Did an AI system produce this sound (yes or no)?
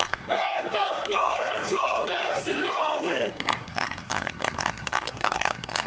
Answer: yes